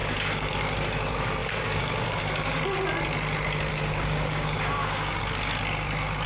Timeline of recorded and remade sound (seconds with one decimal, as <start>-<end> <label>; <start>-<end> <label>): 0.0-0.5 remade; 0.5-1.4 recorded; 1.4-2.6 remade; 2.6-3.7 recorded; 3.7-5.2 remade; 5.2-6.3 recorded